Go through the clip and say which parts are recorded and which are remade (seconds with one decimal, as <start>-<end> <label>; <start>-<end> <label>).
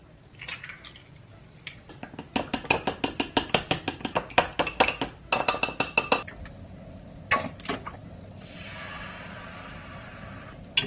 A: 0.0-10.9 recorded